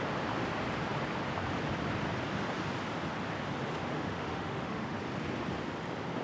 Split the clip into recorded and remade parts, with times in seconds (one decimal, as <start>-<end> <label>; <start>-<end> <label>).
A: 0.0-3.8 recorded; 3.8-5.0 remade; 5.0-6.2 recorded